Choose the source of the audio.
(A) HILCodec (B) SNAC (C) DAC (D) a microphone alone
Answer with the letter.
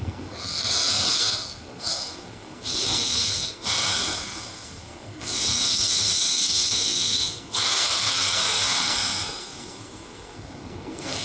B